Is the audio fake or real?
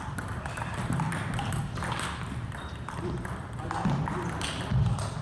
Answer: real